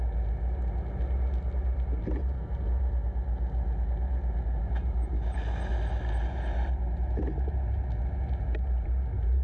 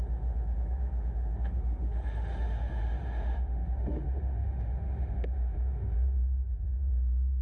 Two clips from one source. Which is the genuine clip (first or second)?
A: first